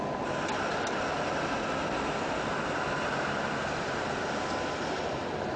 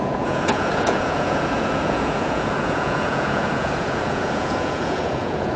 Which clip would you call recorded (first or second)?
first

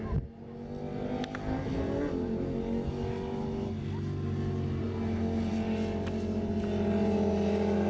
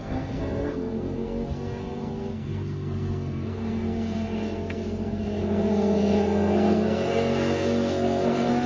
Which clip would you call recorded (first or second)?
first